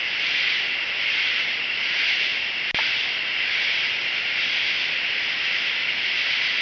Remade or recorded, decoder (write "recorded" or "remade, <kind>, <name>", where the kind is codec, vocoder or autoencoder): recorded